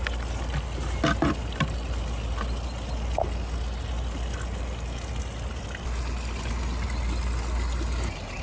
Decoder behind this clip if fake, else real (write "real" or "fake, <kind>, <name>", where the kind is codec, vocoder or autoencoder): real